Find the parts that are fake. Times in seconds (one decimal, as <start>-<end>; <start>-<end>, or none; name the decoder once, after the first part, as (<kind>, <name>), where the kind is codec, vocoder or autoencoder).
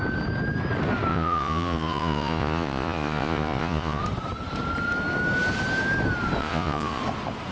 1.1-4.0 (vocoder, Vocos); 6.4-7.0